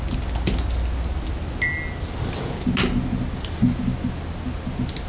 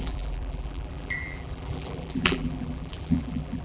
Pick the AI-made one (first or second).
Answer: second